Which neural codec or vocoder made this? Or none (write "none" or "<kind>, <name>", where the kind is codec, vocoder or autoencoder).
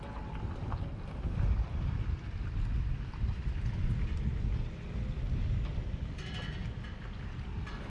none